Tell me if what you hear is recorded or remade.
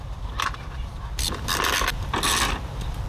remade